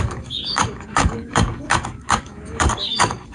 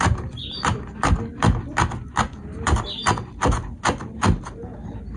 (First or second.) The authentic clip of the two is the second